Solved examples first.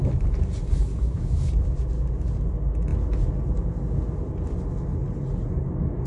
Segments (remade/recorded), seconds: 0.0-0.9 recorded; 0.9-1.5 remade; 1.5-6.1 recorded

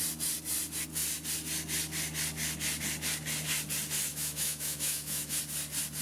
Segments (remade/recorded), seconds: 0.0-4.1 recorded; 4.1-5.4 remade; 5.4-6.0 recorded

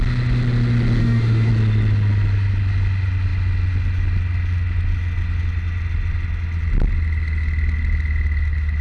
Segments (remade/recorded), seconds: 0.0-1.0 recorded; 1.0-1.5 remade; 1.5-8.8 recorded

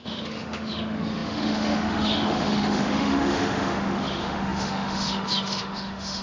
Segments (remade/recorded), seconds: 0.0-6.2 remade